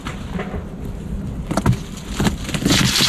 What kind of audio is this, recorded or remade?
recorded